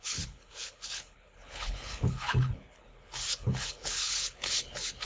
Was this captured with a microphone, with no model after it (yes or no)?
no